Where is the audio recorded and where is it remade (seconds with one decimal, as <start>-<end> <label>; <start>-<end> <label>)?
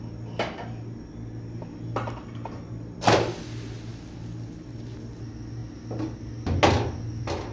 0.0-7.5 recorded